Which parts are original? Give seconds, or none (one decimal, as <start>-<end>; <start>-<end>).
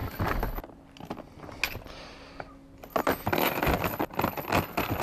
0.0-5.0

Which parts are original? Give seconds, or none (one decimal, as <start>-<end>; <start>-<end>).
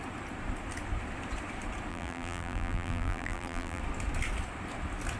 0.0-1.9; 3.8-5.2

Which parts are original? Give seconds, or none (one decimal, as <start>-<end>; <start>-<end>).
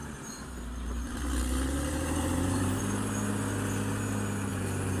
2.8-4.5